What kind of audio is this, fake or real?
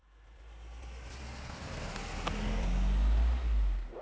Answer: real